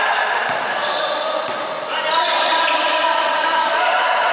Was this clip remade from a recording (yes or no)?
no